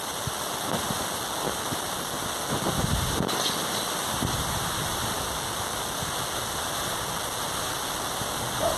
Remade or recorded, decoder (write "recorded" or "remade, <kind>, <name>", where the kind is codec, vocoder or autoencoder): recorded